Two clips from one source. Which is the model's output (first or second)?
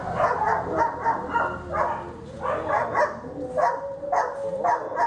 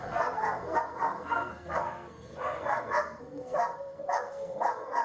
second